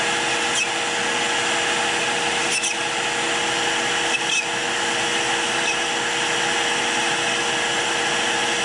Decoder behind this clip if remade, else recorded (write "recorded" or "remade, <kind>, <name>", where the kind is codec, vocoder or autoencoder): recorded